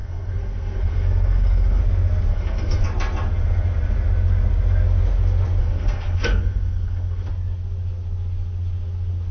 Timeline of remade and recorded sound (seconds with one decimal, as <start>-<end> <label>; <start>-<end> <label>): 0.0-1.8 remade; 1.8-2.3 recorded; 2.3-2.8 remade; 2.8-5.6 recorded; 5.6-7.3 remade; 7.3-9.3 recorded